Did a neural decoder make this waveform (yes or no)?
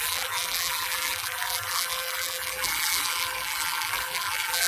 yes